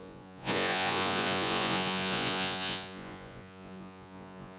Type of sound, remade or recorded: remade